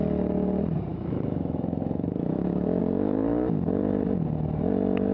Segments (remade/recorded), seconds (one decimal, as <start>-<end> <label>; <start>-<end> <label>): 0.0-0.9 recorded; 0.9-2.8 remade; 2.8-5.1 recorded